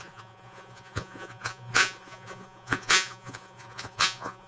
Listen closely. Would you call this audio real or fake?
fake